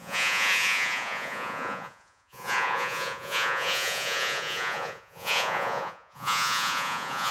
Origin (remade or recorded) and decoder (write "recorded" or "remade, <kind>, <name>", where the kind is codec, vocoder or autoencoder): remade, vocoder, Vocos